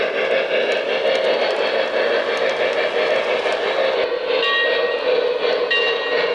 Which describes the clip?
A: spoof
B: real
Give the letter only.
B